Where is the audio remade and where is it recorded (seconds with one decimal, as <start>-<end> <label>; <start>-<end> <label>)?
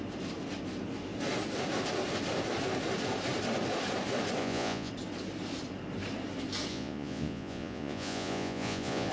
0.0-4.4 recorded; 4.4-4.9 remade; 4.9-6.7 recorded; 6.7-9.1 remade